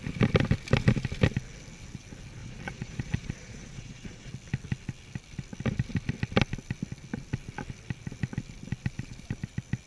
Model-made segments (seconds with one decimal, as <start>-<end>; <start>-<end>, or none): 2.4-4.3